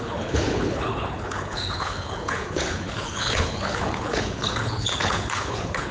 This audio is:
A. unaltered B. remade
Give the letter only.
B